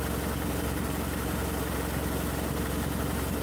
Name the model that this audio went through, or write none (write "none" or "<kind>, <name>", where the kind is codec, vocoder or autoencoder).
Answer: none